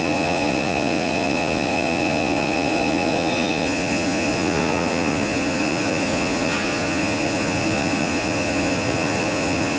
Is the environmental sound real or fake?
fake